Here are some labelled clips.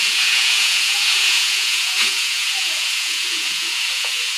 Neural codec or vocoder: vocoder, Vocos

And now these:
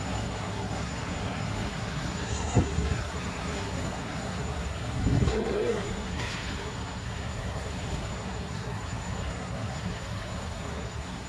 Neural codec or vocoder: codec, SNAC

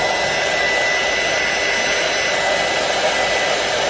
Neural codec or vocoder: none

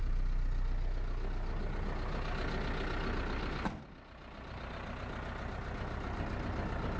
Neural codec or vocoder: none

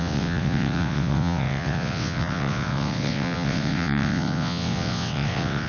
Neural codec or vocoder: vocoder, WaveNeXt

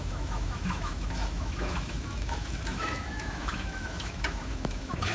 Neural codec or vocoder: autoencoder, DAC-VAE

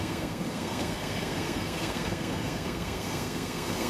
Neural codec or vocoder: codec, SNAC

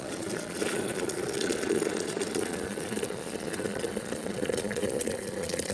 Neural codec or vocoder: vocoder, Vocos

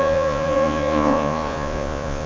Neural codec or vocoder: vocoder, Vocos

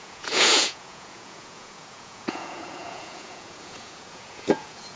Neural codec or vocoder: vocoder, Vocos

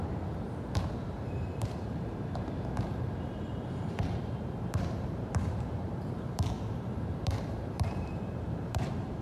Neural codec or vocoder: vocoder, BigVGAN v2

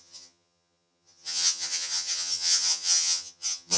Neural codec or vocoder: vocoder, HiFi-GAN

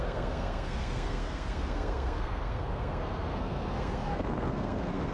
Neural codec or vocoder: codec, SNAC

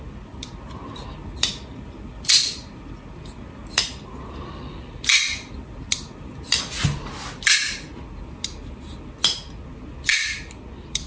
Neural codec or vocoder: none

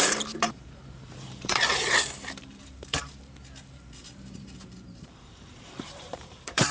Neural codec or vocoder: vocoder, BigVGAN v2